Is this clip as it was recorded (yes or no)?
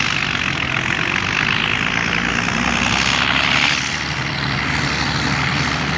yes